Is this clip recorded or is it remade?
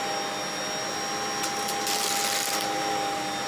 recorded